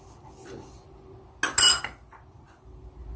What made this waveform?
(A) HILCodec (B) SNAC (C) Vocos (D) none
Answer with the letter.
D